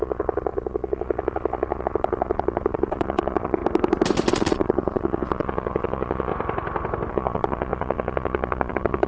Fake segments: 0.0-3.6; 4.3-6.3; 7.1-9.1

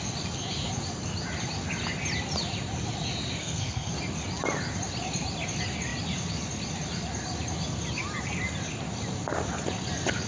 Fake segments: 3.4-3.9

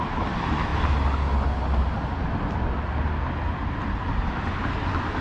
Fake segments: none

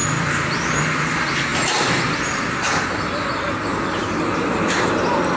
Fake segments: none

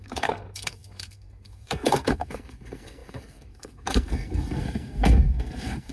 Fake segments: 0.0-5.9